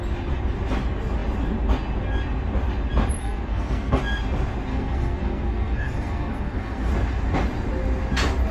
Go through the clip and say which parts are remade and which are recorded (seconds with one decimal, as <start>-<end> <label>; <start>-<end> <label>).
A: 0.0-3.2 recorded; 3.2-4.0 remade; 4.0-4.7 recorded; 4.7-6.9 remade; 6.9-8.5 recorded